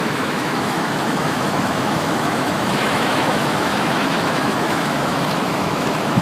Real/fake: fake